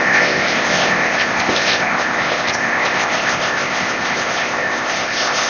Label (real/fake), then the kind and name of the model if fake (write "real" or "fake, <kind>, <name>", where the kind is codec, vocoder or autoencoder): fake, codec, ZipCodec